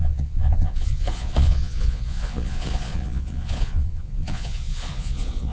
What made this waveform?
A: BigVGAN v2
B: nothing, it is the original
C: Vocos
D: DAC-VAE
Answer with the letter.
C